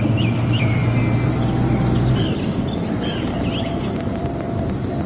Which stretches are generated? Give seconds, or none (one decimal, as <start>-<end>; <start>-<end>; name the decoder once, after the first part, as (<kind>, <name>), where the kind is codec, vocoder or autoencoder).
0.0-0.8 (vocoder, BigVGAN v2); 2.0-5.1